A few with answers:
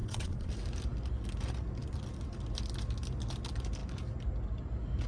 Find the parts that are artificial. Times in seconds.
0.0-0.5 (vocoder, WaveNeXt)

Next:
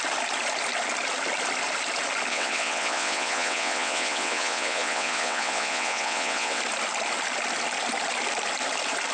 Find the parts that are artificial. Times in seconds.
2.3-6.6 (vocoder, WaveNeXt)